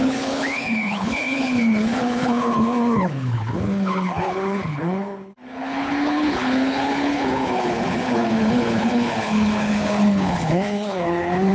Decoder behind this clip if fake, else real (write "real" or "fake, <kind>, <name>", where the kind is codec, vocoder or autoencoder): fake, codec, HILCodec